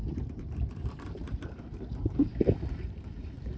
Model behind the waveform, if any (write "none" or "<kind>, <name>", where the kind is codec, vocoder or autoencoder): vocoder, BigVGAN v2